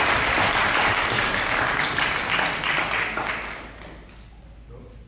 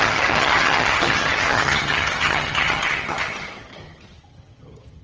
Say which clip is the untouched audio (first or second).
first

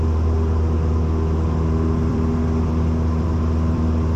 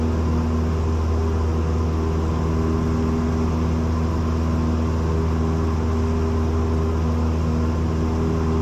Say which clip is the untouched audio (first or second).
second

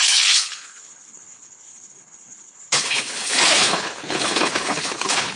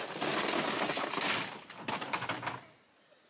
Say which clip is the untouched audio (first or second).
second